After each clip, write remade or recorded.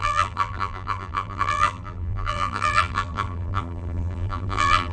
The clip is remade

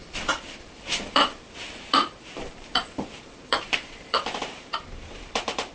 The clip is remade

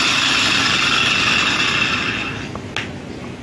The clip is recorded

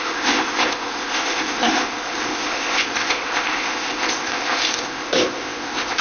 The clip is remade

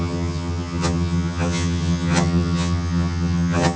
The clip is remade